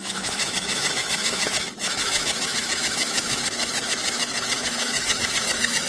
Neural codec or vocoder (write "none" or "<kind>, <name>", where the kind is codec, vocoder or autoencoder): autoencoder, DAC-VAE